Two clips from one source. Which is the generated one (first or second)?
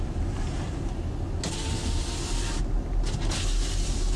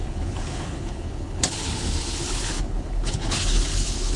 second